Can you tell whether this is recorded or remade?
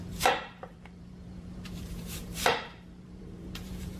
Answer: remade